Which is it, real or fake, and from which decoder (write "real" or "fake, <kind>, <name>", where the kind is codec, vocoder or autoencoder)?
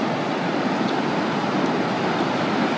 real